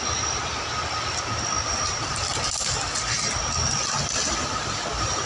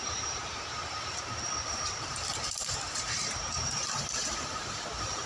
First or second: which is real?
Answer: first